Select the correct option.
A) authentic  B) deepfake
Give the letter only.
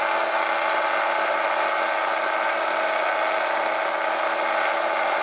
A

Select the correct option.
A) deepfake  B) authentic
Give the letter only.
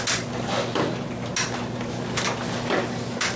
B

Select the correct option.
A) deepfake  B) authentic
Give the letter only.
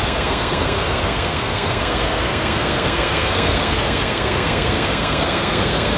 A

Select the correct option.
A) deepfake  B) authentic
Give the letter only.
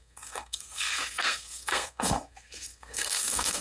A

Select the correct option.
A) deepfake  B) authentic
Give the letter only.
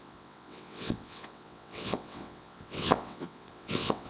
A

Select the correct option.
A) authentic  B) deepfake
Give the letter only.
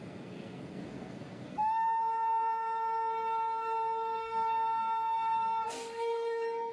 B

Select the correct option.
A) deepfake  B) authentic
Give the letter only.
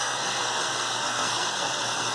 A